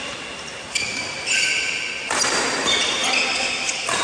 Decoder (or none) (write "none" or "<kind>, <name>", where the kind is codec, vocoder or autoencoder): none